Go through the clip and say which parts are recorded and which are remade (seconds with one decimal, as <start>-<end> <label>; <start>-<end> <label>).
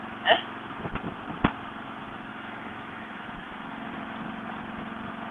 0.0-2.3 recorded; 2.3-3.9 remade; 3.9-5.3 recorded